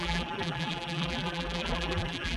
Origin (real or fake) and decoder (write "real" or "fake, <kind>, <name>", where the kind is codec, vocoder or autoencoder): fake, vocoder, BigVGAN v2